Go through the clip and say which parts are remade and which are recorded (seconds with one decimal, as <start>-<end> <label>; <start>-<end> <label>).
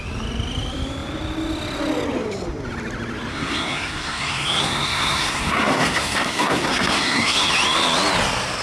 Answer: 0.0-3.3 recorded; 3.3-7.5 remade; 7.5-8.6 recorded